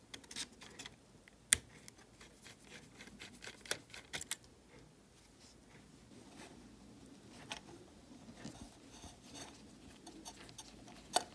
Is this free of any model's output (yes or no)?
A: yes